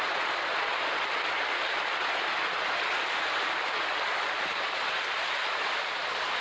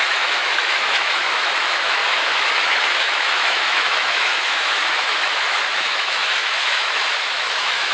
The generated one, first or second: second